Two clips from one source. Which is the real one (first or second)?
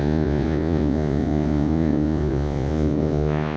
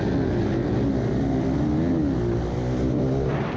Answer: second